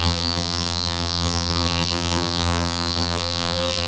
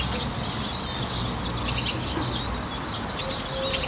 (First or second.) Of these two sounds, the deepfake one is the first